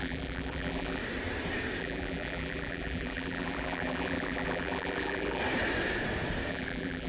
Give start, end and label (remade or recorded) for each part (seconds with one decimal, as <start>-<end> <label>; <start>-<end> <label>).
0.0-1.0 remade; 1.0-1.8 recorded; 1.8-5.4 remade; 5.4-6.5 recorded; 6.5-7.1 remade